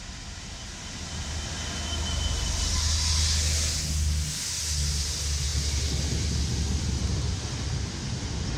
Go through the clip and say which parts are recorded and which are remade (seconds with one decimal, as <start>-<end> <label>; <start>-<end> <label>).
0.0-8.6 recorded